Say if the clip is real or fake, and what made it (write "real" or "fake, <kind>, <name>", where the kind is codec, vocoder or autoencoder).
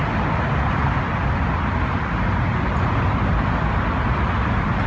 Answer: real